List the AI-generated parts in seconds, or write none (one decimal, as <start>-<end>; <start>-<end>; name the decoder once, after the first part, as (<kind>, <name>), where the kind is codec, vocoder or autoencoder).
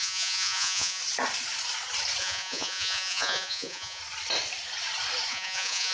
0.0-1.0 (vocoder, Vocos); 2.2-4.0; 5.3-5.9